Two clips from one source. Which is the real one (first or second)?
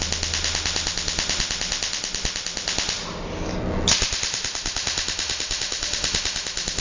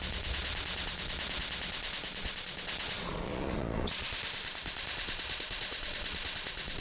first